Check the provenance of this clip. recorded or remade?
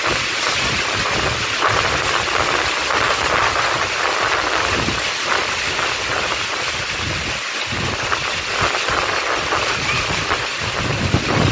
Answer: recorded